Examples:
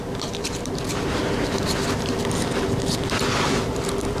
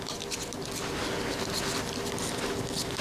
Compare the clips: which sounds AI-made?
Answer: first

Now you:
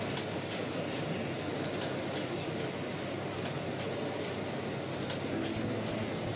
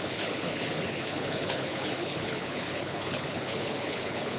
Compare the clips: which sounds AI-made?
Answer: second